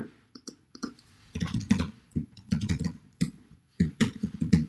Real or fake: fake